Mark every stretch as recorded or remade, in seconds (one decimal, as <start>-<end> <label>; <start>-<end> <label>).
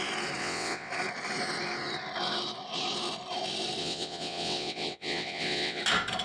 0.0-0.4 recorded; 0.4-0.9 remade; 0.9-3.8 recorded; 3.8-5.8 remade; 5.8-6.2 recorded